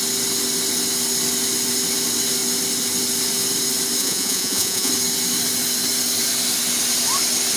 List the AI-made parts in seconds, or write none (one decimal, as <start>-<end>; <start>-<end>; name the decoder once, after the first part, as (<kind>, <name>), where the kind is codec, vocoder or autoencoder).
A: 4.0-4.9 (vocoder, Vocos)